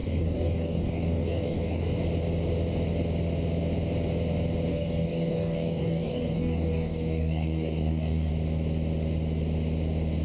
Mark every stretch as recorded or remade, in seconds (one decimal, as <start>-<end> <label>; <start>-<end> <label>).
0.0-2.0 remade; 2.0-4.7 recorded; 4.7-8.3 remade; 8.3-10.2 recorded